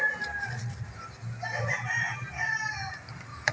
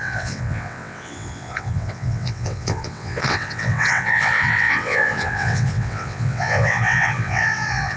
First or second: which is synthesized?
second